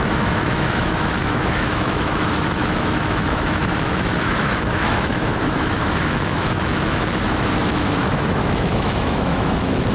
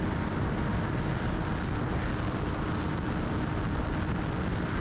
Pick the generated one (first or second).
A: first